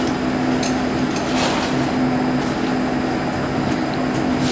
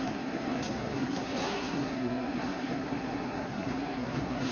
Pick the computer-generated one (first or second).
second